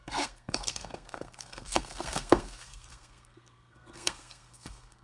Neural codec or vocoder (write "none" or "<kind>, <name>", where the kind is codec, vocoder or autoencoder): codec, SNAC